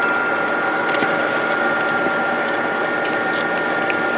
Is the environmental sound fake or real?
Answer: real